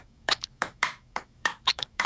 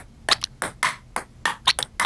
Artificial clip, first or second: first